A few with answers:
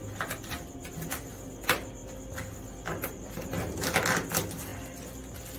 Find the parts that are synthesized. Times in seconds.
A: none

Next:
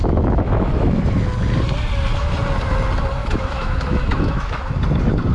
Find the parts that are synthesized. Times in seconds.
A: 0.0-1.0 (autoencoder, DAC-VAE); 3.2-4.7

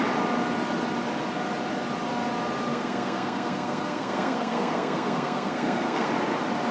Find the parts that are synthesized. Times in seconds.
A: 2.7-6.1 (codec, SNAC)

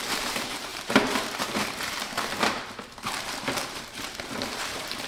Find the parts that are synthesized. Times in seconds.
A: 0.0-5.1 (vocoder, BigVGAN v2)